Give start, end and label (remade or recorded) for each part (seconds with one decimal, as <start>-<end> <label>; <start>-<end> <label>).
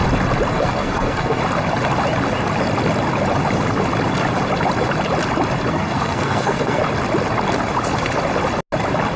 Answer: 0.0-0.5 recorded; 0.5-1.4 remade; 1.4-5.7 recorded; 5.7-6.8 remade; 6.8-9.2 recorded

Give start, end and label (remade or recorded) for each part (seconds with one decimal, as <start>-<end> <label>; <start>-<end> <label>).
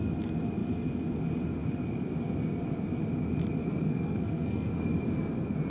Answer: 0.0-3.6 recorded; 3.6-4.7 remade; 4.7-5.7 recorded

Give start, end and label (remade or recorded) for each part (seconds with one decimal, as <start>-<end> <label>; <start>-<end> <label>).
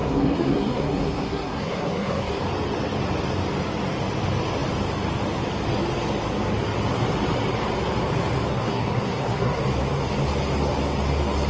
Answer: 0.0-2.4 remade; 2.4-8.5 recorded; 8.5-9.6 remade; 9.6-11.5 recorded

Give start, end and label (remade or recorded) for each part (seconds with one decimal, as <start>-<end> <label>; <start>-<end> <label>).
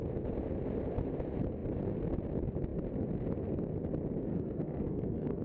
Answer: 0.0-4.3 recorded; 4.3-5.4 remade